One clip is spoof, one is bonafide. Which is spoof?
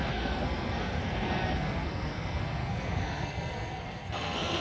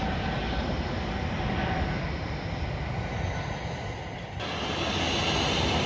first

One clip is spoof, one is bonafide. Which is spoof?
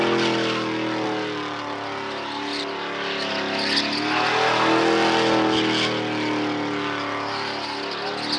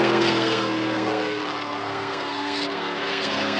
second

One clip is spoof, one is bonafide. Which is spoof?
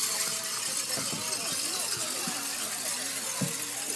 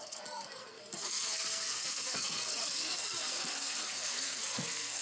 second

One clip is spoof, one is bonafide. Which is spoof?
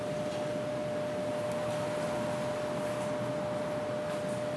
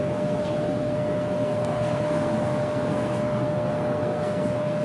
second